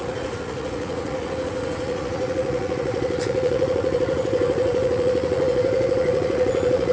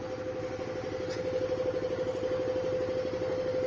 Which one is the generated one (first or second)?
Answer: first